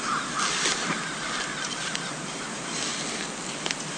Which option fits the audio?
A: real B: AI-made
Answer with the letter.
A